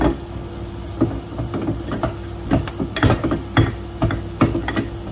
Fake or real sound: real